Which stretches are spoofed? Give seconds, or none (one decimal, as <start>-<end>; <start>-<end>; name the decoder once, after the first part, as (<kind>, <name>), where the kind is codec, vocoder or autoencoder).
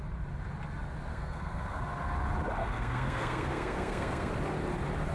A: 1.1-1.8 (codec, SNAC); 2.6-4.3